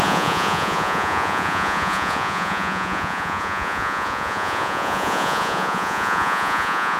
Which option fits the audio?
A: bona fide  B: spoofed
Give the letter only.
B